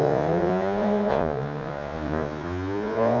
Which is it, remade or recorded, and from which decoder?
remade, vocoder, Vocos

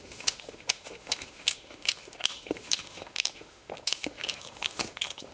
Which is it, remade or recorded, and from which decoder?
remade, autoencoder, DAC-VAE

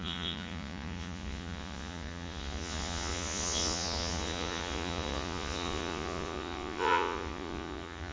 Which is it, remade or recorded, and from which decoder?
remade, vocoder, Vocos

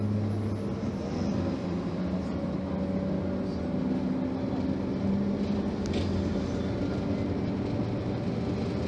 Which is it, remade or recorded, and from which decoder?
recorded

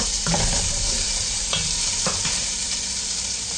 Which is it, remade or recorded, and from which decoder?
remade, vocoder, BigVGAN v2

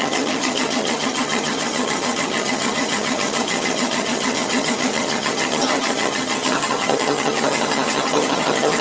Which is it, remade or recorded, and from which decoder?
remade, vocoder, HiFi-GAN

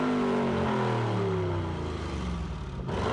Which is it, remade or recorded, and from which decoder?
recorded